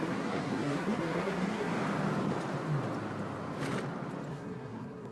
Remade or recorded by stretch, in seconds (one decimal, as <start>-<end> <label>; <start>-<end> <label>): 0.0-1.7 remade; 1.7-4.3 recorded; 4.3-5.1 remade